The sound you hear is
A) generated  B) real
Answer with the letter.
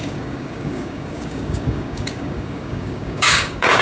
A